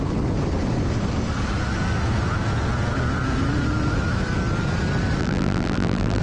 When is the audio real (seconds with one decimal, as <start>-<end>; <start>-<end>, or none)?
0.0-5.2